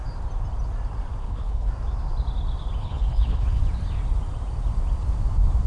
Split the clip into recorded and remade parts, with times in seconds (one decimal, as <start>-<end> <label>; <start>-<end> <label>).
0.0-1.2 recorded; 1.2-1.7 remade; 1.7-2.8 recorded; 2.8-3.6 remade; 3.6-5.7 recorded